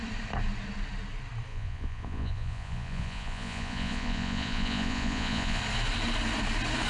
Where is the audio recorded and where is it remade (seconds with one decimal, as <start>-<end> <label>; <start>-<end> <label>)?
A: 0.0-1.5 recorded; 1.5-5.6 remade; 5.6-6.9 recorded